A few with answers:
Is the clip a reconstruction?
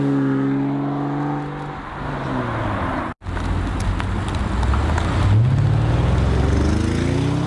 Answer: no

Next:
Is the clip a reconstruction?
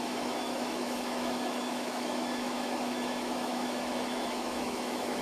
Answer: yes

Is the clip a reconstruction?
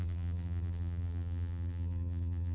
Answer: yes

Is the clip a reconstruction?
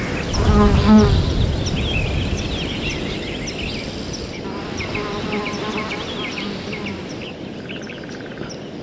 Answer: no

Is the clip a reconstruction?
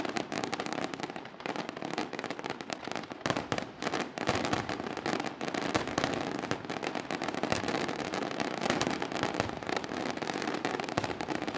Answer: yes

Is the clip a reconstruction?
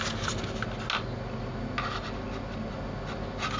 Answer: no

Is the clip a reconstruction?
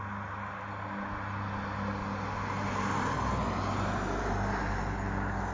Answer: no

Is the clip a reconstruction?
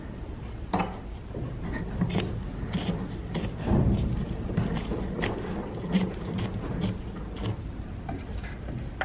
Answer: no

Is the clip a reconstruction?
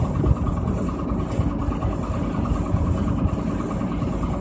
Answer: no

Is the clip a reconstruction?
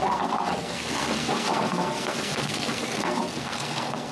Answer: yes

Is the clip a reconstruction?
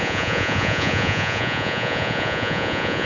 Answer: yes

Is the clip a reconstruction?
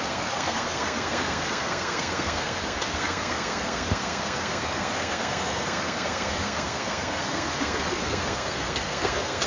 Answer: yes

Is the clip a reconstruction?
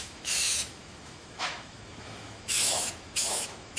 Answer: yes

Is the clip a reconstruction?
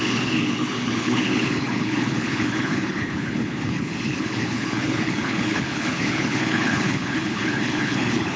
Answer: yes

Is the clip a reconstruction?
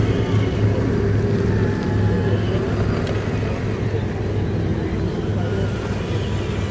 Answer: no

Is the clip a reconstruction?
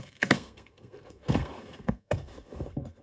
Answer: yes